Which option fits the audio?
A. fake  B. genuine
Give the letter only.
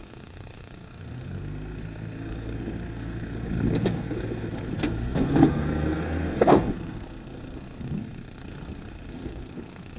A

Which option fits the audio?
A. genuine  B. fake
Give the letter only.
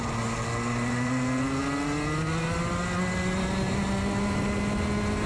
A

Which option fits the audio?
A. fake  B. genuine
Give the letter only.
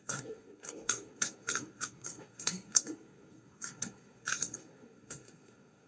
A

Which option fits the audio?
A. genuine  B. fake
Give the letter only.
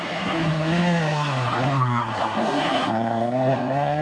B